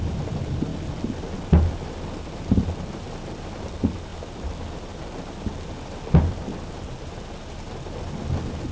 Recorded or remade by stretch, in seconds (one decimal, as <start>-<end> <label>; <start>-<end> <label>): 0.0-8.7 recorded